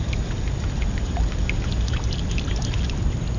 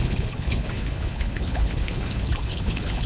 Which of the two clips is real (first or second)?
first